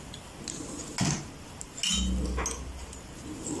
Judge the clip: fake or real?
real